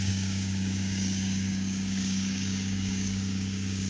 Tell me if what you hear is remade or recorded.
remade